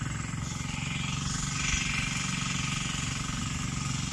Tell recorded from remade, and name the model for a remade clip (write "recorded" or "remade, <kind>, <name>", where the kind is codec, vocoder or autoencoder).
recorded